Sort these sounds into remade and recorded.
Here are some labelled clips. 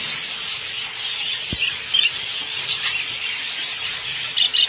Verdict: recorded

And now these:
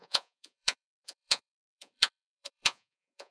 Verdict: remade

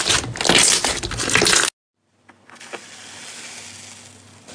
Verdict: recorded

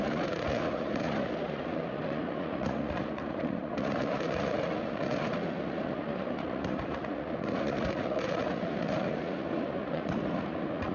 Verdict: remade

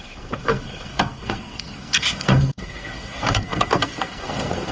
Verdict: remade